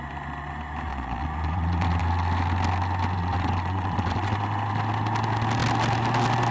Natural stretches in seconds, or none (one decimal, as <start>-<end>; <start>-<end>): 0.0-0.9; 2.0-3.2; 4.3-6.5